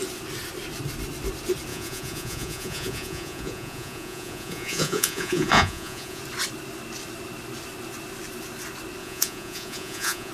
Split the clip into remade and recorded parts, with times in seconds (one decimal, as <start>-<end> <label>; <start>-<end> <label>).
0.0-1.7 recorded; 1.7-6.2 remade; 6.2-9.0 recorded; 9.0-10.3 remade